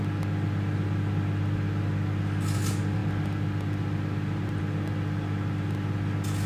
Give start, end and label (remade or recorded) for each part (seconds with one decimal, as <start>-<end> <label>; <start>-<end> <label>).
0.0-6.5 recorded